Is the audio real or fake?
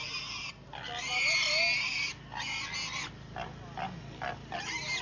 real